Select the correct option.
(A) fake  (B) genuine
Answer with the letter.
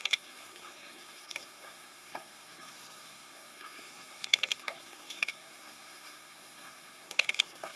A